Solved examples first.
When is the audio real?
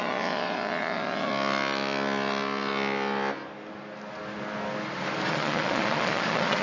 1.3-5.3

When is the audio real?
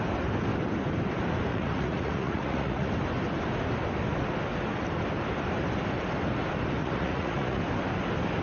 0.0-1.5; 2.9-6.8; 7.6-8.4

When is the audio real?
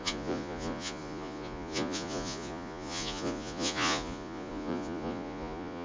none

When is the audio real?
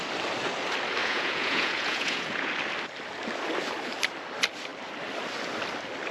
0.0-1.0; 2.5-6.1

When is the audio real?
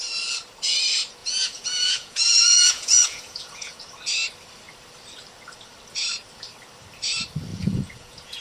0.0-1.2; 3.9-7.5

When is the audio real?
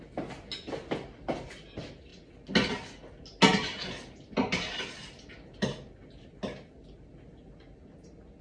0.0-8.4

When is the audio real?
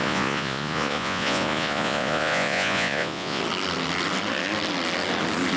3.4-5.6